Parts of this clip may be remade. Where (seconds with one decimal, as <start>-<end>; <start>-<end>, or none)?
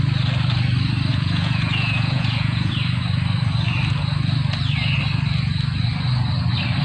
1.1-2.7